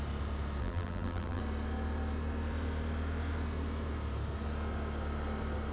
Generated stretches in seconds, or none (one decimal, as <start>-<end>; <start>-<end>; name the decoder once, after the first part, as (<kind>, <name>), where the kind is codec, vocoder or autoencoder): 0.6-1.4 (vocoder, BigVGAN v2)